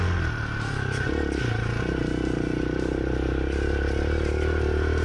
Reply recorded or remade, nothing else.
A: recorded